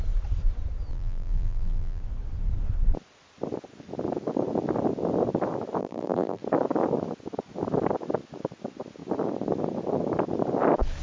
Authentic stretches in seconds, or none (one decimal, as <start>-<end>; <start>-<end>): 0.0-0.9; 2.0-5.8; 6.4-11.0